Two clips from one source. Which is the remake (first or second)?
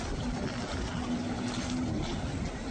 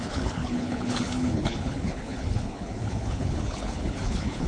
second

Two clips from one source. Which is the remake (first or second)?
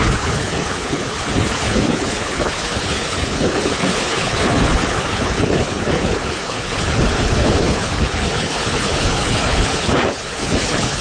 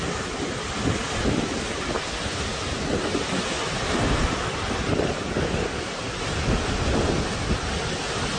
first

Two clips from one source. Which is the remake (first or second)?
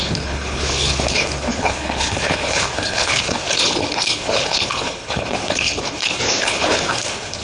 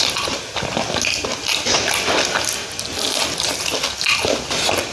first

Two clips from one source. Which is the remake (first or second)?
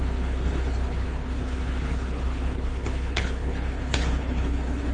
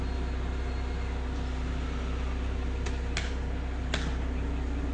first